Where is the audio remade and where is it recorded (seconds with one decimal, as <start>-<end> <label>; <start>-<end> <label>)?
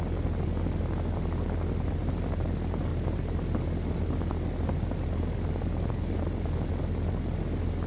0.0-7.9 recorded